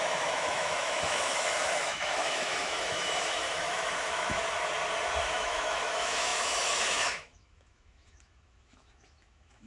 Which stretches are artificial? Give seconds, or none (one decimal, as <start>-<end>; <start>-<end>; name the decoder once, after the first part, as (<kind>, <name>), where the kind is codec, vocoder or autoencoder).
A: 0.0-4.4 (autoencoder, DAC-VAE); 5.2-9.7